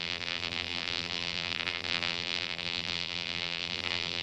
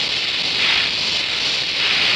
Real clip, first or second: second